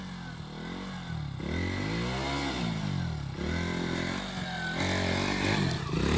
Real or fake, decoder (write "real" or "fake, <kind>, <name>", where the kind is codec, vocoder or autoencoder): real